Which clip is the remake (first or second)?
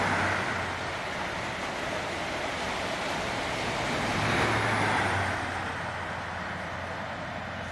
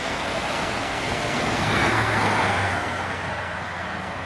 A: second